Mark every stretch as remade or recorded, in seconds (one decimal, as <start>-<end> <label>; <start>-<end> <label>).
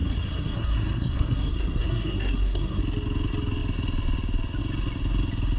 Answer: 0.0-2.8 remade; 2.8-5.6 recorded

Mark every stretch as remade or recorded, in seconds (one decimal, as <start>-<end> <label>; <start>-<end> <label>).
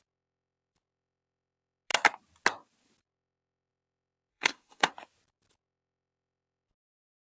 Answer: 0.0-4.3 recorded; 4.3-4.9 remade; 4.9-7.3 recorded